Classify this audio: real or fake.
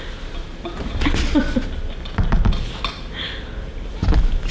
real